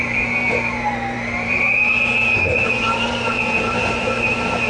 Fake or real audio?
fake